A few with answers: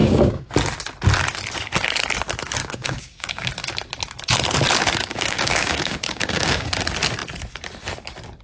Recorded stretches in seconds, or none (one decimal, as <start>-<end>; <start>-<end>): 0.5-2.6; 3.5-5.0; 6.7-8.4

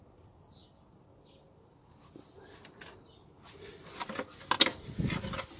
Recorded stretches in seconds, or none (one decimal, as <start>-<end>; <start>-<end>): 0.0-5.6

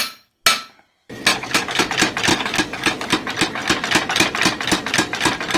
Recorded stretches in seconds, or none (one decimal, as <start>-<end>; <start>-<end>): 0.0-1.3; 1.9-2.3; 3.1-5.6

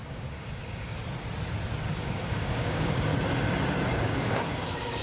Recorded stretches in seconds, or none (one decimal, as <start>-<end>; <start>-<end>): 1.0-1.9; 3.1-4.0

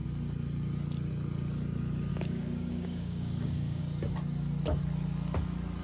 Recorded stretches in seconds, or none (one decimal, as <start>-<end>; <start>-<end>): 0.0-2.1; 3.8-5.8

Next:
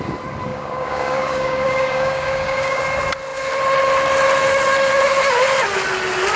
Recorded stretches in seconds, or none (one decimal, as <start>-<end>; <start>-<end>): 0.0-0.5; 2.8-6.4

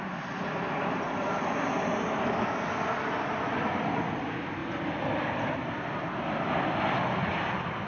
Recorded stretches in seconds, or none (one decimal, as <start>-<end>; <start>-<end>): 0.0-7.9